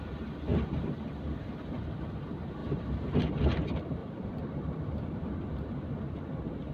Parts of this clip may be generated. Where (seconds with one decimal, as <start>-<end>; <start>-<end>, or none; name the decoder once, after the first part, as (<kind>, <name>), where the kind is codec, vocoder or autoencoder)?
0.5-1.4 (vocoder, BigVGAN v2); 2.6-3.2; 4.0-6.7